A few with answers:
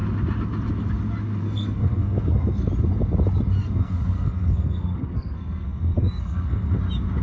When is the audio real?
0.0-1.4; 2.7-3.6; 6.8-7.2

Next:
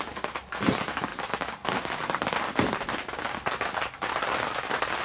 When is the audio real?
0.0-5.0

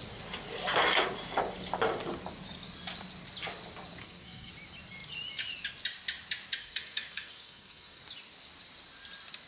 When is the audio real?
0.0-4.0; 4.5-6.6; 8.0-9.5

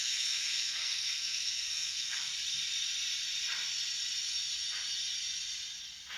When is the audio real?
2.3-6.2

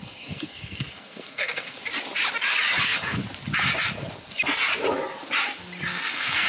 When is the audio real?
1.8-2.8; 3.2-6.1